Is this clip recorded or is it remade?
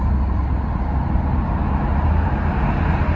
recorded